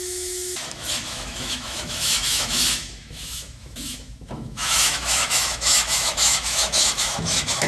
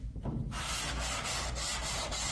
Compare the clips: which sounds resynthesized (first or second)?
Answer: first